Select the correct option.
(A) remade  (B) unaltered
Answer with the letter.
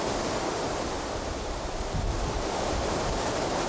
A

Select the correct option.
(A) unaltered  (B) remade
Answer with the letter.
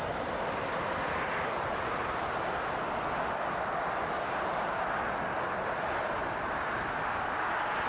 A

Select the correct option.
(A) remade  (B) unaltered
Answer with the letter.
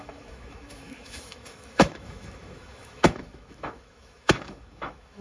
A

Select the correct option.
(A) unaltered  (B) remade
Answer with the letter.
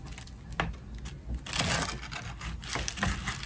A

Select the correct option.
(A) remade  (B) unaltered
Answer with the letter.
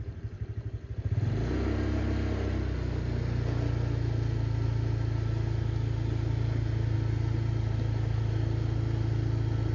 B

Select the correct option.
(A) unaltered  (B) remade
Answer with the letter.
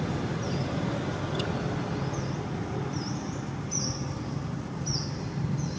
A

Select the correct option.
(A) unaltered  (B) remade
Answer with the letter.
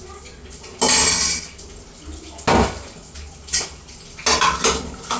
A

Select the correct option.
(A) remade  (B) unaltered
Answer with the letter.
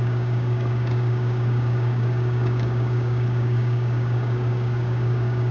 A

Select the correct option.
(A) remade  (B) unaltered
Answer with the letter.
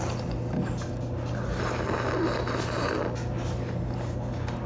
B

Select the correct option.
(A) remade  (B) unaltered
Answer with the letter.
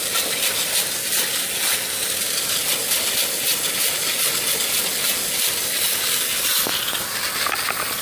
B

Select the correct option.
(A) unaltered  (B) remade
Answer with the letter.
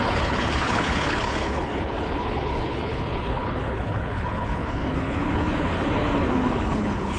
B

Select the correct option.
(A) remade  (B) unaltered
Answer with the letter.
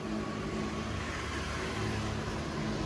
B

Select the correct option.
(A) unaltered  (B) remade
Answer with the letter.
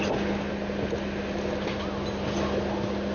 A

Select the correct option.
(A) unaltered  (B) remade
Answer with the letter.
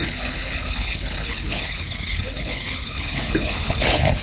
B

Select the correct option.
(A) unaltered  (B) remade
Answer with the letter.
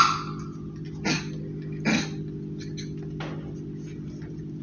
A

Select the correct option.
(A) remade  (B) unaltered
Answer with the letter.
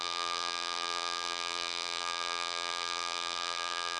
A